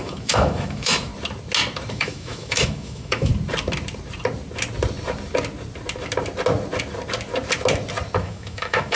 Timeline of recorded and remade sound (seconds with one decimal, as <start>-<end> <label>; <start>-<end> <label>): 0.0-1.1 remade; 1.1-1.9 recorded; 1.9-3.3 remade; 3.3-8.2 recorded; 8.2-9.0 remade